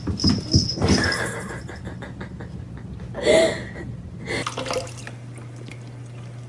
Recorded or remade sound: recorded